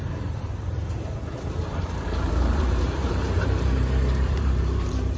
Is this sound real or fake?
fake